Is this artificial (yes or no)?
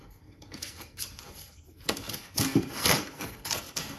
yes